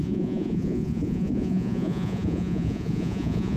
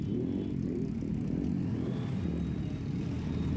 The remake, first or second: first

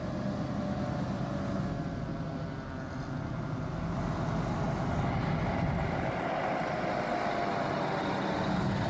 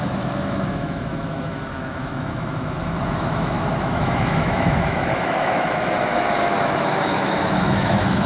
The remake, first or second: second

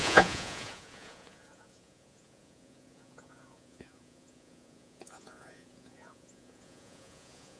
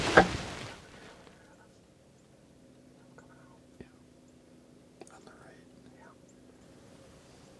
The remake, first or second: first